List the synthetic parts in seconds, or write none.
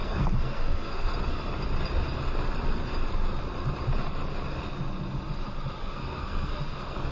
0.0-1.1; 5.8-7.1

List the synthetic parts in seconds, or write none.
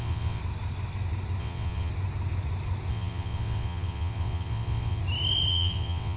0.0-0.4; 1.4-1.9; 2.9-5.0; 5.5-6.2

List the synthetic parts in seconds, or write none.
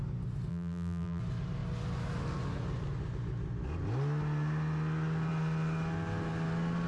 0.5-1.2